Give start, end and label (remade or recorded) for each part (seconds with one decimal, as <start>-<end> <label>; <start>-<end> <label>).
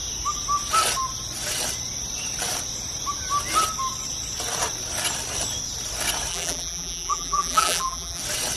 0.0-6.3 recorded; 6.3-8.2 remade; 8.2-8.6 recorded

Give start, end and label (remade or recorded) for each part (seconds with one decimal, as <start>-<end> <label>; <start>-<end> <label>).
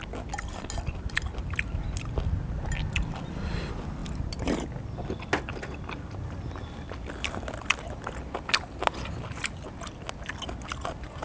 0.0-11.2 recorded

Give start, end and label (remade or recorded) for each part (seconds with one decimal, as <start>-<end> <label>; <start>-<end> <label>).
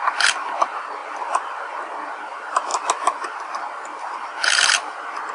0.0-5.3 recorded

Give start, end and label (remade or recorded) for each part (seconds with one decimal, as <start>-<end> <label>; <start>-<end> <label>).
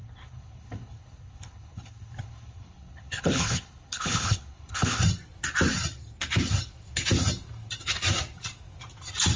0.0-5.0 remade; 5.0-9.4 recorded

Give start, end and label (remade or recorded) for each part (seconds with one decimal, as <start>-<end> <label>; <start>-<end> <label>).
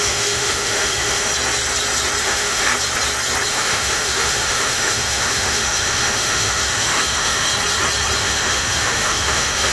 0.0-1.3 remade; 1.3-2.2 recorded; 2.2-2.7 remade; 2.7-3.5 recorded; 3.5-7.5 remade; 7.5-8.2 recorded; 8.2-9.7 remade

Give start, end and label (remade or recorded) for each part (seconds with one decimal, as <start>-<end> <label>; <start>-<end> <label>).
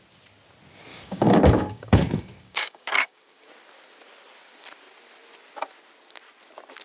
0.0-0.9 recorded; 0.9-3.5 remade; 3.5-6.8 recorded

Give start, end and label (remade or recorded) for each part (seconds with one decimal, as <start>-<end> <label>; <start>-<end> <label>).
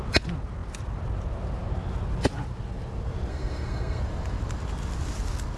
0.0-3.3 recorded; 3.3-4.0 remade; 4.0-5.6 recorded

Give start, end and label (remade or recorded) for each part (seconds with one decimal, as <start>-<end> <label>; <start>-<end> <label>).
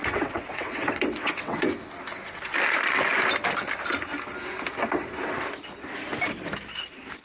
0.0-1.6 remade; 1.6-7.2 recorded